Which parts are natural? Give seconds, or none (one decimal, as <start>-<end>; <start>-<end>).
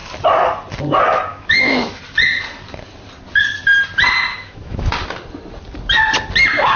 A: 0.0-1.3; 2.0-4.3; 4.9-6.8